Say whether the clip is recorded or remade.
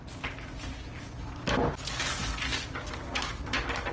recorded